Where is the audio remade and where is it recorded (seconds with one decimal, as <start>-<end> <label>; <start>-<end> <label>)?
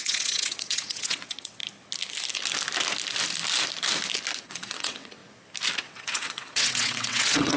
0.0-1.6 remade; 1.6-4.4 recorded; 4.4-5.2 remade; 5.2-5.8 recorded; 5.8-7.6 remade